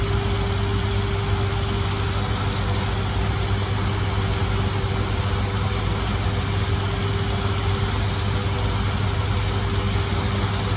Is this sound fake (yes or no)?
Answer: no